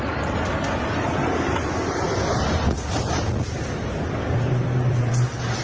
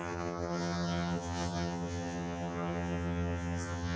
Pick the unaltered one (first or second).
first